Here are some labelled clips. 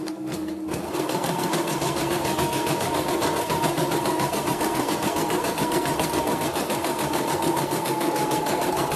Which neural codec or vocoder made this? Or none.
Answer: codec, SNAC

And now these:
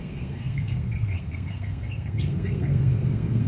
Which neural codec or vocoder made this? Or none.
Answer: codec, SNAC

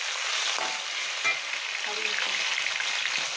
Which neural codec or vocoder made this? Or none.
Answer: none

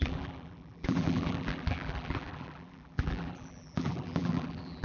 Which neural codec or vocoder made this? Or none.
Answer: vocoder, BigVGAN v2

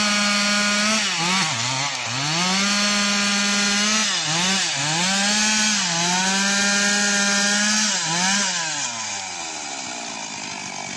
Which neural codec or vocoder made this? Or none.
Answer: none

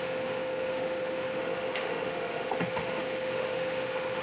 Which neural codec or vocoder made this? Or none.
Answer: autoencoder, DAC-VAE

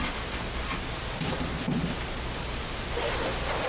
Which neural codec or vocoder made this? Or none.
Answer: none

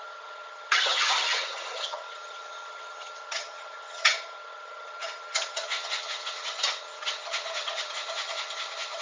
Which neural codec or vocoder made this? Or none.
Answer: vocoder, HiFi-GAN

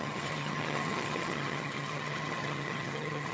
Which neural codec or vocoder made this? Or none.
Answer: vocoder, HiFi-GAN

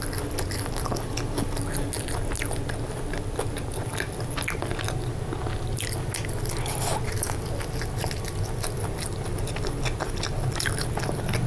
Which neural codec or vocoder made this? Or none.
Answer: none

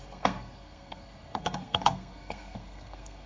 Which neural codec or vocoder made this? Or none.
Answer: codec, SNAC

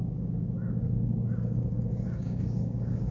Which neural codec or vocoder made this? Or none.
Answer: codec, DAC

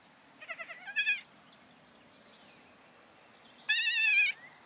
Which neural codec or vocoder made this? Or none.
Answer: none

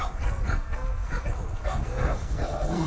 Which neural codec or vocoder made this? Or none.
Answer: codec, SNAC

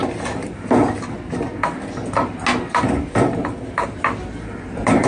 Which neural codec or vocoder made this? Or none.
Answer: none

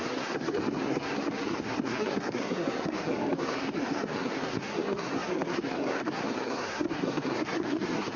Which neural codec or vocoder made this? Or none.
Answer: codec, SNAC